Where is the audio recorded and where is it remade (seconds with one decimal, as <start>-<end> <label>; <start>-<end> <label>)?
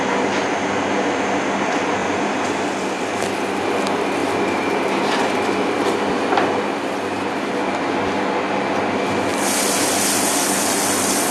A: 0.0-2.0 recorded; 2.0-3.6 remade; 3.6-4.2 recorded; 4.2-7.5 remade; 7.5-11.3 recorded